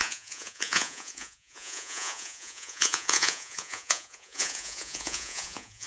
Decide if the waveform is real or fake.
fake